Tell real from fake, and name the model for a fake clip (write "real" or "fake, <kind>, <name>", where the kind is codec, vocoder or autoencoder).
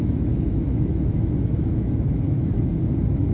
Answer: fake, autoencoder, DAC-VAE